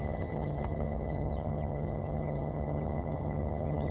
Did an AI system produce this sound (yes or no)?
yes